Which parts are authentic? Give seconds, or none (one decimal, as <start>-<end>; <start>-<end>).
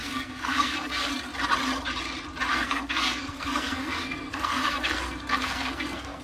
1.1-2.5